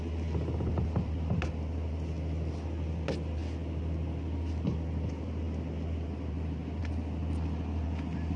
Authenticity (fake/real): real